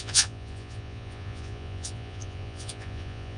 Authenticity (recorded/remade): remade